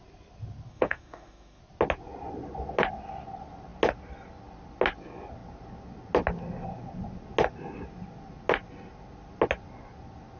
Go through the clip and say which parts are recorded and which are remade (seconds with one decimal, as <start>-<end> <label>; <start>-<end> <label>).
0.0-0.7 recorded; 0.7-1.6 remade; 1.6-10.4 recorded